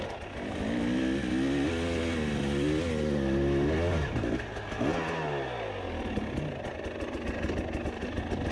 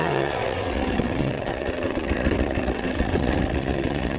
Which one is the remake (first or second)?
second